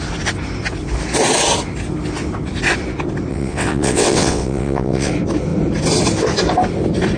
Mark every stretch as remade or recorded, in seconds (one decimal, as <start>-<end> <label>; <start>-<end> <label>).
0.0-3.3 recorded; 3.3-5.1 remade; 5.1-7.2 recorded